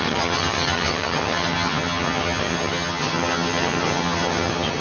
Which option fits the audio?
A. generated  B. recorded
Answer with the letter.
A